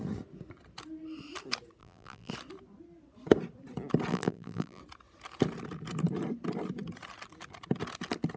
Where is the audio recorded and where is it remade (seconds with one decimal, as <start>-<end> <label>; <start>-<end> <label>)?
0.0-1.8 recorded; 1.8-2.3 remade; 2.3-4.1 recorded; 4.1-4.8 remade; 4.8-8.4 recorded